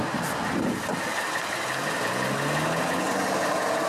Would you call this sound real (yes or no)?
yes